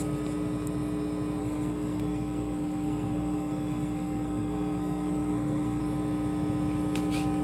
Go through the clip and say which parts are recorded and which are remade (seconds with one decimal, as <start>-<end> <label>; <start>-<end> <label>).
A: 0.0-1.4 recorded; 1.4-5.8 remade; 5.8-7.4 recorded